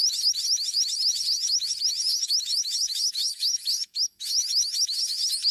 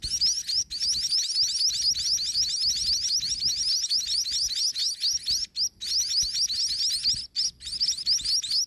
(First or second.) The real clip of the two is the second